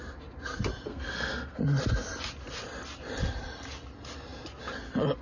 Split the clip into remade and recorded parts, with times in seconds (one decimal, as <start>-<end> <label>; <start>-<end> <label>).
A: 0.0-0.9 recorded; 0.9-1.6 remade; 1.6-5.2 recorded